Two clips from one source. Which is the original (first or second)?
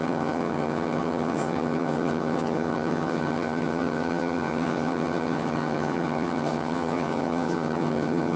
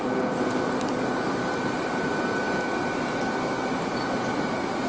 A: second